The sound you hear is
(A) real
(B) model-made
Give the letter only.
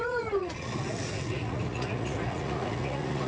B